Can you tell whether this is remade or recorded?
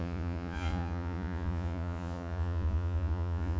remade